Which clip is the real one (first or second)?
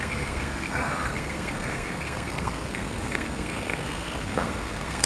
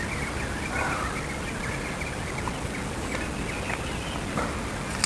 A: second